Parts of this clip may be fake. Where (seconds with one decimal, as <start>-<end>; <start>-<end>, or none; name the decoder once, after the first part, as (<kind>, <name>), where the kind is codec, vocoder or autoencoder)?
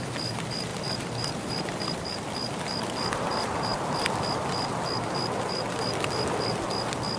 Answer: none